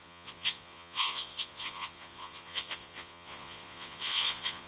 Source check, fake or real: fake